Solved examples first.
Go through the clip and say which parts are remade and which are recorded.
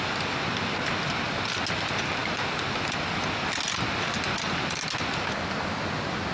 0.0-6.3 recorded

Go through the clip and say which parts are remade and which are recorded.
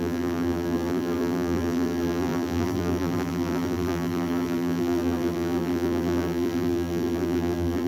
0.0-7.9 remade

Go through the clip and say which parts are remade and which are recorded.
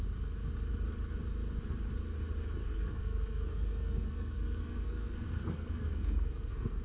0.0-2.6 recorded; 2.6-6.8 remade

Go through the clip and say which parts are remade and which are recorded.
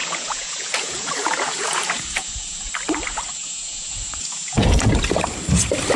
0.0-2.7 remade; 2.7-3.4 recorded; 3.4-4.9 remade; 4.9-6.0 recorded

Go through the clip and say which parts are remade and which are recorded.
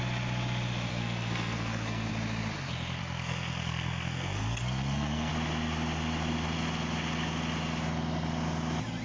0.0-0.9 recorded; 0.9-2.1 remade; 2.1-3.0 recorded; 3.0-5.3 remade; 5.3-9.0 recorded